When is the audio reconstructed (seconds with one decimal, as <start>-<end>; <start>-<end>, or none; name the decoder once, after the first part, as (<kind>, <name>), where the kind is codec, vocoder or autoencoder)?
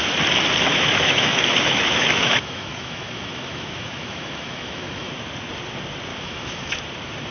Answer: 0.7-5.1 (autoencoder, DAC-VAE); 6.1-6.8